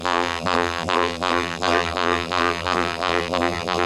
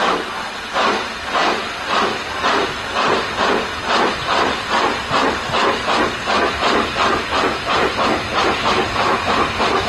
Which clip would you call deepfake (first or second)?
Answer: first